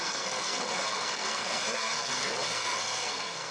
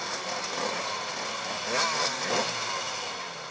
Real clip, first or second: second